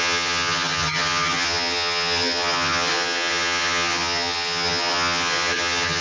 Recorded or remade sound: remade